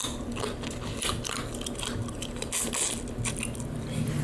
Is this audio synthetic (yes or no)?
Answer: no